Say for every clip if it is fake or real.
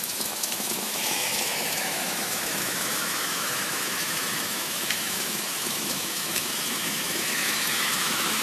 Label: fake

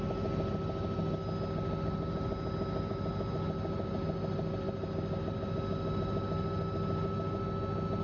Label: real